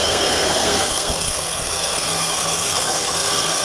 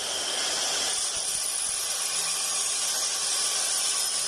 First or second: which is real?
second